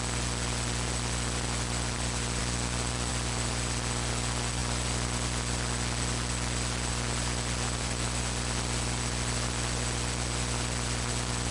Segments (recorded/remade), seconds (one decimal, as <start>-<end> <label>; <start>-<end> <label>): 0.0-11.5 recorded